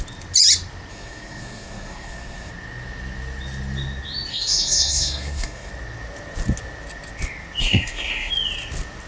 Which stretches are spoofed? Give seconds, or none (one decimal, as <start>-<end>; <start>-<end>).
0.9-2.5; 4.3-5.7; 7.6-8.3